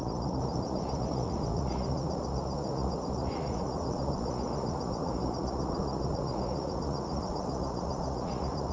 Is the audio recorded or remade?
remade